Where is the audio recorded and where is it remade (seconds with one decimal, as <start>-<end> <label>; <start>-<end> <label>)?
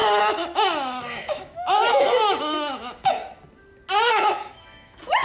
0.0-3.2 remade; 3.2-4.1 recorded; 4.1-5.2 remade